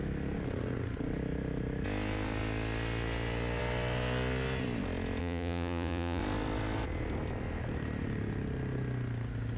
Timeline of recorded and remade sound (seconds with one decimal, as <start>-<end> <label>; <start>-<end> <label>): 0.0-5.2 recorded; 5.2-6.2 remade; 6.2-9.6 recorded